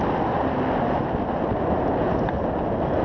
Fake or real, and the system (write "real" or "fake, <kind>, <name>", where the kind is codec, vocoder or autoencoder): real